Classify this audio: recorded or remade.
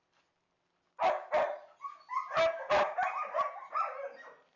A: recorded